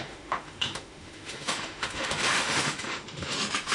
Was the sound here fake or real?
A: fake